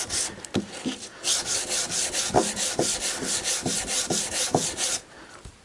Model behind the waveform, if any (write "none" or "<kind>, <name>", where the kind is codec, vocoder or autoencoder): none